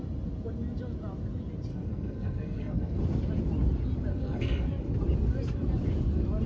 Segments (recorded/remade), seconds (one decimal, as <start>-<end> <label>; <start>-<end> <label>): 0.0-1.7 recorded; 1.7-3.0 remade; 3.0-4.1 recorded; 4.1-4.7 remade; 4.7-6.5 recorded